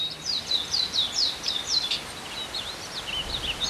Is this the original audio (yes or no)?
yes